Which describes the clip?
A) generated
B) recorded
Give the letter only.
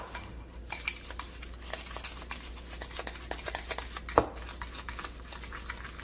B